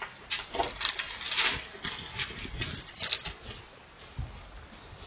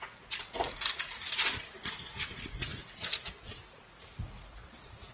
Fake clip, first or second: second